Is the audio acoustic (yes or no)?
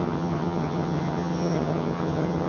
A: no